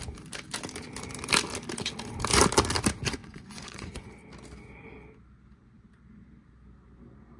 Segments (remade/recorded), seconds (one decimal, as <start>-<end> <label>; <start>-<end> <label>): 0.0-3.2 recorded; 3.2-4.1 remade; 4.1-7.4 recorded